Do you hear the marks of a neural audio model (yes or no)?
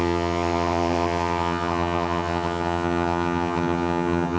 yes